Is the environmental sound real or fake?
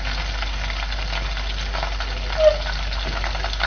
real